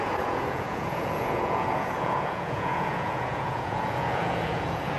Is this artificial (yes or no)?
yes